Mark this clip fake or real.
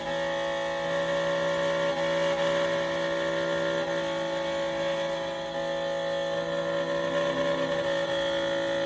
real